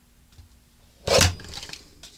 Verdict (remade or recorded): recorded